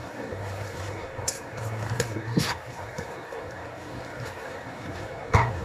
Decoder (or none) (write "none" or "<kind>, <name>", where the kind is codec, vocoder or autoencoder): codec, SNAC